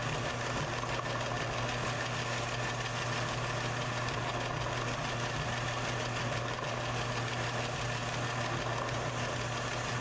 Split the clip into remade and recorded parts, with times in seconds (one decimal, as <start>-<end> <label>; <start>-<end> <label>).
0.0-10.0 recorded